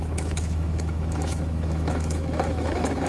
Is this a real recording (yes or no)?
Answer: no